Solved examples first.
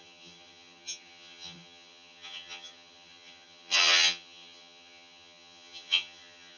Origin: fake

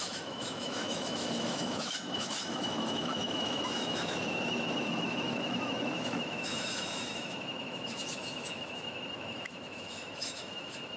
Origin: fake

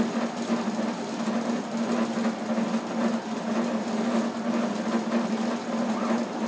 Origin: real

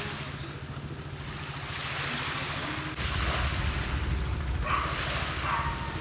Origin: real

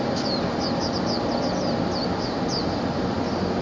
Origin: real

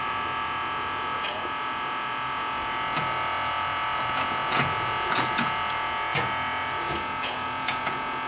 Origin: fake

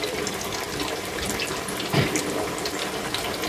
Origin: real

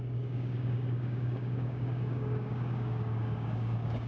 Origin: fake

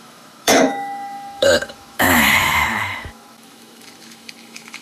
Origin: fake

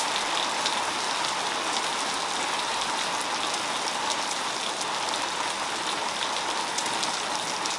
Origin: real